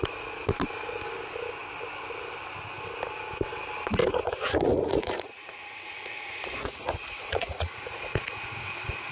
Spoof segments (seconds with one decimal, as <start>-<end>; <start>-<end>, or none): 4.0-9.1